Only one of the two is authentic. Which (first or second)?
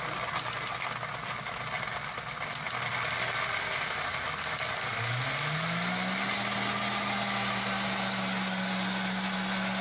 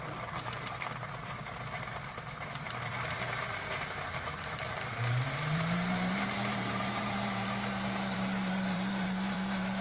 first